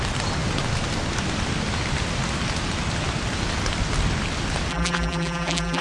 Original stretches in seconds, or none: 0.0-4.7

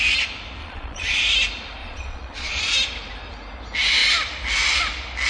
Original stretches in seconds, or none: 0.0-0.6; 1.2-1.8; 2.6-5.3

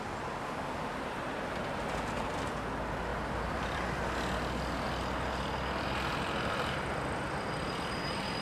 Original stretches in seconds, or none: 0.0-3.1; 4.0-6.1; 7.8-8.4